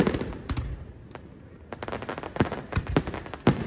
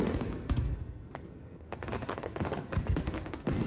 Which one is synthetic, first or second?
second